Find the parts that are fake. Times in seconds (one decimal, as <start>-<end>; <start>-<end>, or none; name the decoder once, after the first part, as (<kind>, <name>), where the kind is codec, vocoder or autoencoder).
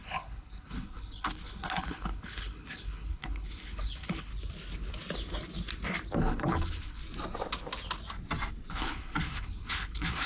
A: 0.0-4.3 (codec, HILCodec); 6.2-7.0; 8.7-10.3